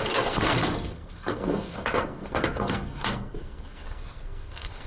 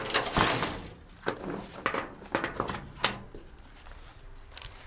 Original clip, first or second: second